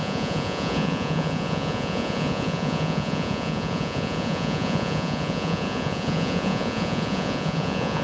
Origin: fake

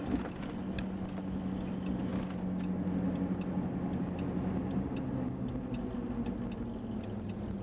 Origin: real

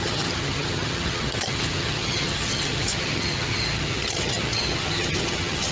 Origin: fake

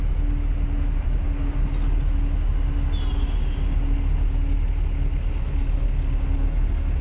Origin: real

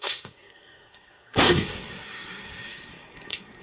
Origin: fake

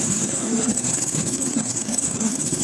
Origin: fake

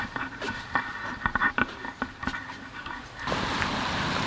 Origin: real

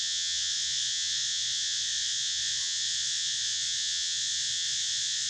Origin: fake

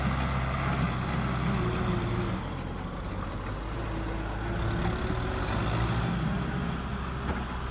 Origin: real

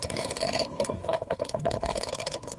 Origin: fake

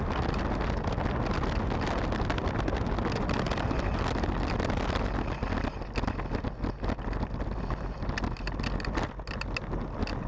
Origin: real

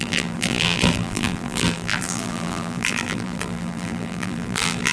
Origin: fake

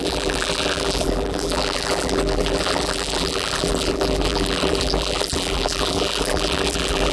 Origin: fake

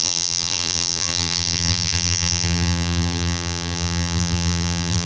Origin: fake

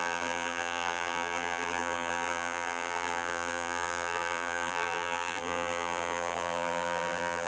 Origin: fake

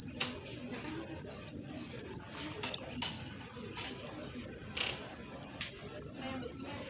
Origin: real